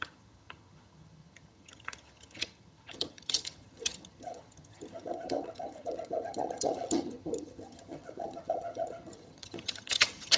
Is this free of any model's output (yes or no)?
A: no